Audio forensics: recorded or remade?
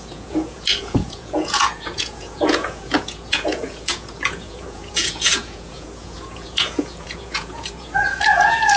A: remade